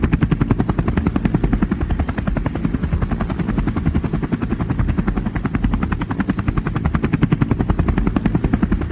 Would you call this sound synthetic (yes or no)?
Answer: no